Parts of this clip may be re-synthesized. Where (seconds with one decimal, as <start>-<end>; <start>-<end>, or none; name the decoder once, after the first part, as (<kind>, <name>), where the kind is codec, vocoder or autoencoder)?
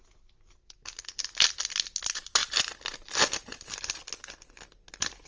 none